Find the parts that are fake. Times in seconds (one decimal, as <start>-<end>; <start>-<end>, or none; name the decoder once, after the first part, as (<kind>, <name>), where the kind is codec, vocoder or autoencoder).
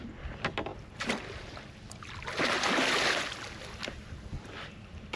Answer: none